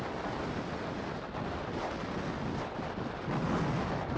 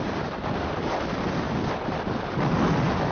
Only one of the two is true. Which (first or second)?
first